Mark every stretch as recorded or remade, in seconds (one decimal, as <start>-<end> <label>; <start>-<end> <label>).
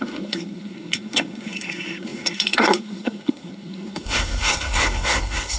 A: 0.0-5.6 remade